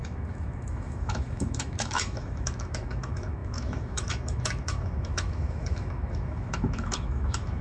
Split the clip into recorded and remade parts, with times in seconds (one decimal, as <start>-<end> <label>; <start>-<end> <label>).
0.0-7.6 remade